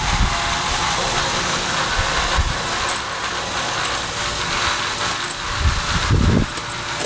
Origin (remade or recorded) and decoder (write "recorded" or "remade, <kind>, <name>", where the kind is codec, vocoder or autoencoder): recorded